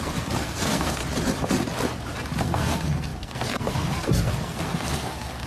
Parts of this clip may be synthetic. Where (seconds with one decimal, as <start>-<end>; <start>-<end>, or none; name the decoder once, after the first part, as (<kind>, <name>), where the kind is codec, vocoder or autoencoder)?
0.0-1.0 (codec, SNAC); 2.4-5.5